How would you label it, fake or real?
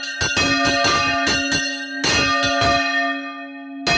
real